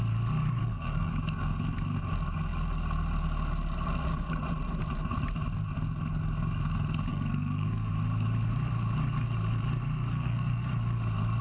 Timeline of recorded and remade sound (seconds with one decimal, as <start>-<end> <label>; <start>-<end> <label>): 0.0-0.6 recorded; 0.6-1.1 remade; 1.1-7.1 recorded; 7.1-7.9 remade; 7.9-10.1 recorded; 10.1-10.7 remade; 10.7-11.4 recorded